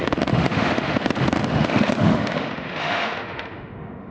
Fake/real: fake